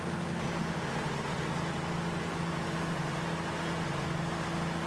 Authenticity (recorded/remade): recorded